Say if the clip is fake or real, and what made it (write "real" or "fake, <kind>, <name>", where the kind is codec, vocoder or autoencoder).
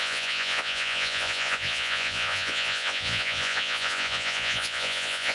fake, vocoder, Vocos